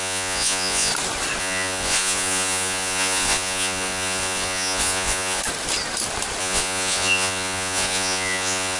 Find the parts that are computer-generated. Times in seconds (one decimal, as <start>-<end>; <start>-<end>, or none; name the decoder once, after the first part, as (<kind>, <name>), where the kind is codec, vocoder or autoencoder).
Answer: 0.0-0.9 (vocoder, Vocos); 1.4-5.4; 6.4-8.8